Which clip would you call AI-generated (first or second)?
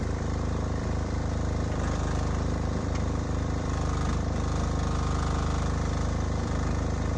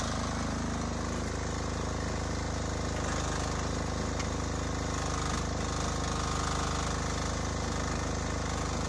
first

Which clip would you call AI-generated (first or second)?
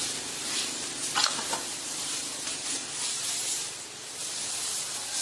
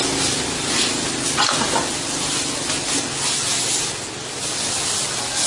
first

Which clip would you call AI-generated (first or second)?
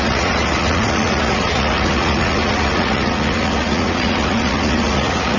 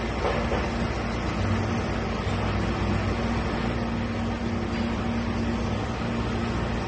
first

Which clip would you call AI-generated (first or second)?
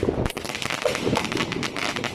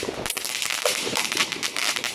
second